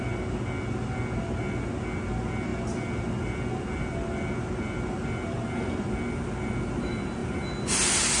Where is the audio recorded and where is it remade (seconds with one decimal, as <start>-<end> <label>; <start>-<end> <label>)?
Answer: 0.0-8.2 recorded